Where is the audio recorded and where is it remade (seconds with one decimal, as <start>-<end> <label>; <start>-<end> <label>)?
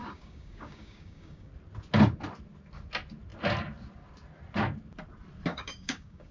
0.0-1.5 remade; 1.5-5.5 recorded; 5.5-6.3 remade